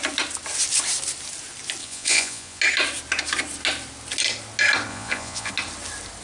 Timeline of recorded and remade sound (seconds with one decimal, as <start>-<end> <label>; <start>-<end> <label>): 0.0-1.8 recorded; 1.8-2.6 remade; 2.6-4.9 recorded; 4.9-5.5 remade; 5.5-6.2 recorded